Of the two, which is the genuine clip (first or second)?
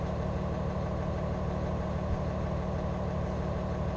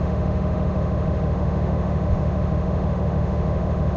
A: first